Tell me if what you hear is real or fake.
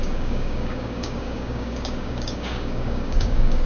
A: fake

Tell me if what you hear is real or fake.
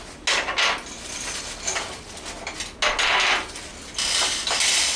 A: real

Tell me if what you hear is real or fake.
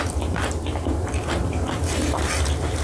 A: real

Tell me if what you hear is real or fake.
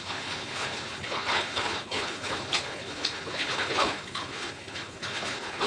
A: fake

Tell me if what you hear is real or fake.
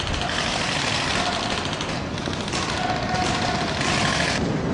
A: real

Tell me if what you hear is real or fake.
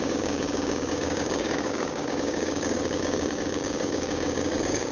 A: fake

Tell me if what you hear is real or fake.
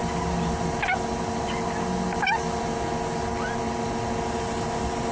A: real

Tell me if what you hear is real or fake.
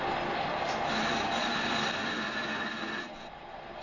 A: real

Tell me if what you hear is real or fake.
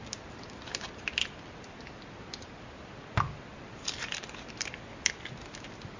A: fake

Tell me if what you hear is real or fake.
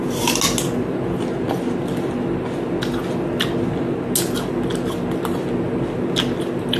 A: real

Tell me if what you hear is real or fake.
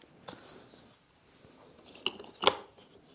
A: real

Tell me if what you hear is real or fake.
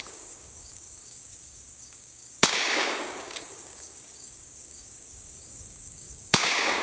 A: fake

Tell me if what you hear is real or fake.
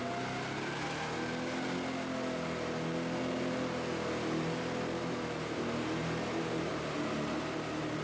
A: real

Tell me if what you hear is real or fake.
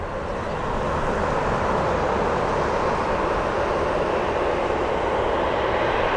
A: real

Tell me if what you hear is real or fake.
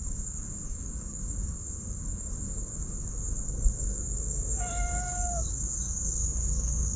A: fake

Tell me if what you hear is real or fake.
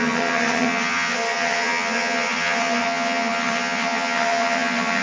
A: fake